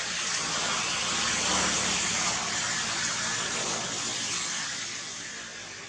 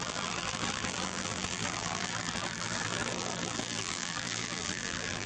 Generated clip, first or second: second